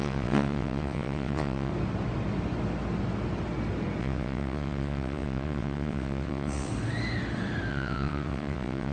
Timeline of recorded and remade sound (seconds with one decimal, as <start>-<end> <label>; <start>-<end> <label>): 0.0-1.7 remade; 1.7-4.0 recorded; 4.0-6.7 remade; 6.7-7.7 recorded; 7.7-8.9 remade

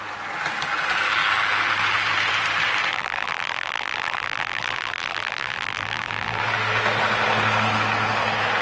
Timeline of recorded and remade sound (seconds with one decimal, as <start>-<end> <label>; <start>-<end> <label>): 0.0-2.9 recorded; 2.9-6.4 remade; 6.4-8.6 recorded